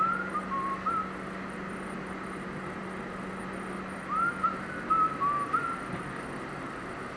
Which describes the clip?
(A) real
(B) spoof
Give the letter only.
A